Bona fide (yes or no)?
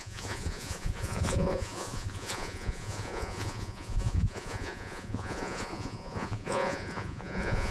no